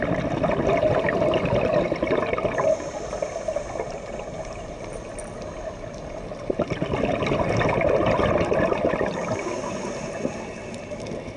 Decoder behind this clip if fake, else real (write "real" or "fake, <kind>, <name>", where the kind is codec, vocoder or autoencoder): real